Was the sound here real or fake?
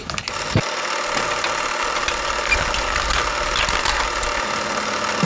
real